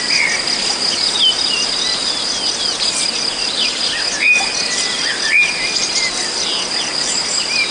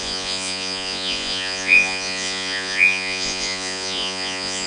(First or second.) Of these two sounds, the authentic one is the first